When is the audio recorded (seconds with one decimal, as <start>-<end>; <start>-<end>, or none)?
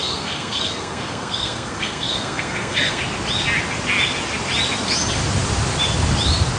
3.0-6.6